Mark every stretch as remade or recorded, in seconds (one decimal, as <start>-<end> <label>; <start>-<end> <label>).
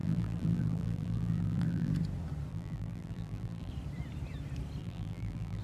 0.0-1.9 remade; 1.9-2.5 recorded; 2.5-3.7 remade; 3.7-4.8 recorded; 4.8-5.6 remade